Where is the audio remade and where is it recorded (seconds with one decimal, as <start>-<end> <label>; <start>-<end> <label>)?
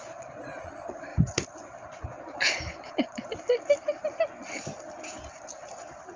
0.0-1.1 remade; 1.1-2.9 recorded; 2.9-3.3 remade; 3.3-6.2 recorded